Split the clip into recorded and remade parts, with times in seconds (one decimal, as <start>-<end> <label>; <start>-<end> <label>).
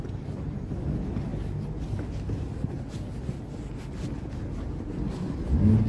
0.0-5.9 recorded